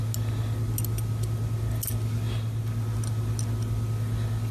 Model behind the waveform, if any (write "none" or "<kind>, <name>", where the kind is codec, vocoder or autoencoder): none